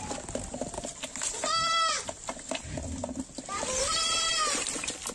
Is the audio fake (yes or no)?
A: no